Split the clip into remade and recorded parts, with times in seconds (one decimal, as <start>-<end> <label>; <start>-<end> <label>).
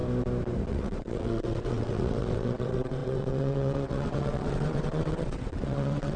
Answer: 0.0-0.7 recorded; 0.7-6.2 remade